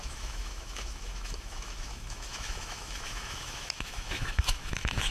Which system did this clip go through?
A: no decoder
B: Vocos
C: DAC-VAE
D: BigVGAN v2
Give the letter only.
C